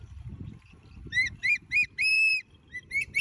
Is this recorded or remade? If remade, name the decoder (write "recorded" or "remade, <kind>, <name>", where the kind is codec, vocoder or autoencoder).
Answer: remade, vocoder, BigVGAN v2